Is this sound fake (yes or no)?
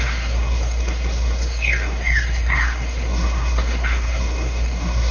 yes